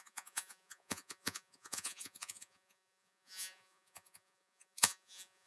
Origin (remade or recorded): remade